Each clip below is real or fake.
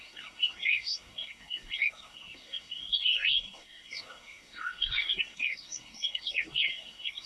fake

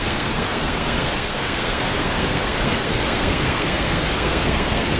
fake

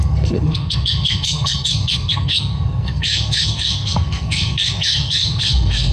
fake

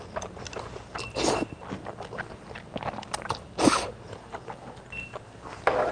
real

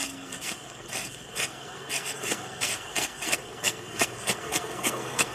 fake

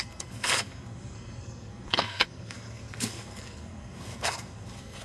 fake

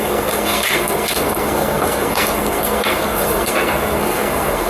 fake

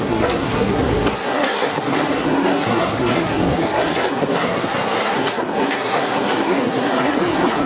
fake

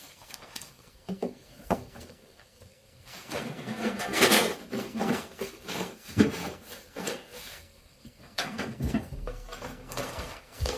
fake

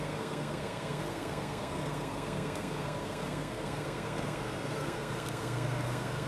fake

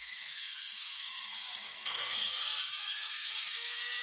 fake